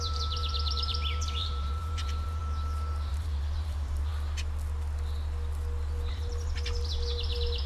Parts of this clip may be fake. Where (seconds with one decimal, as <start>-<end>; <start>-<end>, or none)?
0.0-2.4; 3.1-4.1; 6.1-7.7